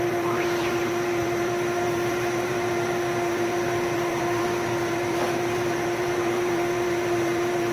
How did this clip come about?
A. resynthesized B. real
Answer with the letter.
A